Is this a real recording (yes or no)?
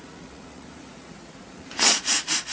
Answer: no